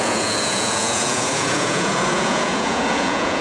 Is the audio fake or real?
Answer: fake